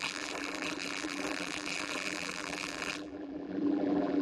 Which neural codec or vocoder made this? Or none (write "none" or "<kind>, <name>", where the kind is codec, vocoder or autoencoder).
vocoder, BigVGAN v2